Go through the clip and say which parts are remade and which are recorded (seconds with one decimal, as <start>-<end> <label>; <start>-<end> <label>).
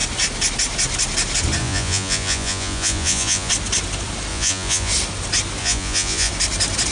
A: 0.0-1.6 recorded; 1.6-3.5 remade; 3.5-4.3 recorded; 4.3-4.9 remade; 4.9-5.6 recorded; 5.6-6.3 remade; 6.3-6.9 recorded